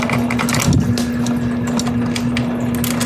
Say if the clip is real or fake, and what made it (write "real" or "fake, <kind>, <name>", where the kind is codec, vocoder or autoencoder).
real